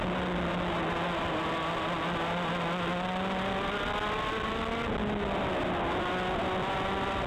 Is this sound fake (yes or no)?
no